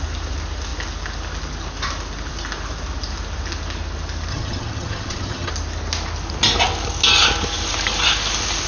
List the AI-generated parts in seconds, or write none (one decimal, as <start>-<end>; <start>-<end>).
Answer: 4.3-5.5